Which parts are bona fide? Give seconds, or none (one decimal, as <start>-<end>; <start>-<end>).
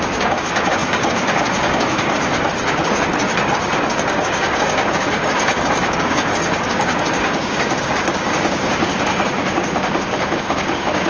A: none